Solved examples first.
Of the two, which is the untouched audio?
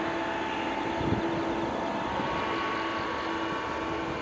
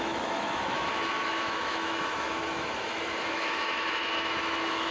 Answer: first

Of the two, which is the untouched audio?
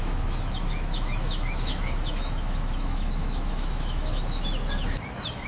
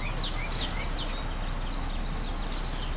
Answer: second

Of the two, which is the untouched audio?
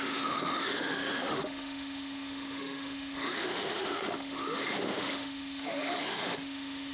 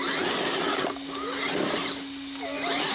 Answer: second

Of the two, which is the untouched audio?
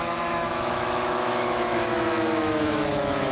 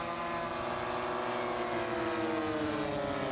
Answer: second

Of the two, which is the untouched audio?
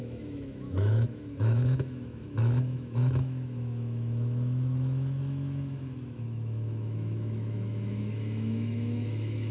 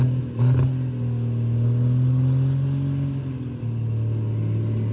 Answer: second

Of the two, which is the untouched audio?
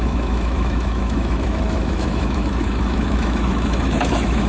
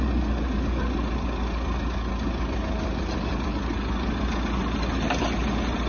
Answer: second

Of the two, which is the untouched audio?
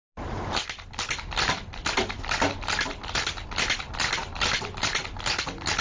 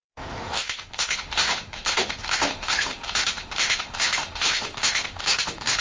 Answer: first